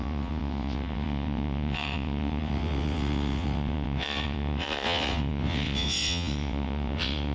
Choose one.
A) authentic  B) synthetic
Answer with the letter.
B